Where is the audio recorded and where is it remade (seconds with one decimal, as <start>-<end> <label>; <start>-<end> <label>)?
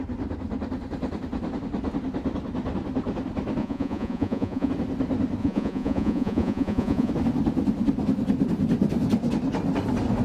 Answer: 0.0-3.6 recorded; 3.6-4.7 remade; 4.7-5.4 recorded; 5.4-7.1 remade; 7.1-10.2 recorded